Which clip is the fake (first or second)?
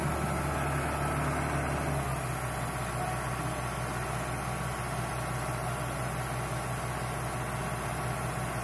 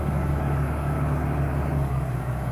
second